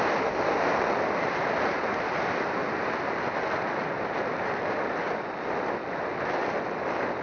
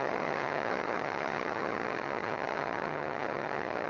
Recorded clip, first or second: first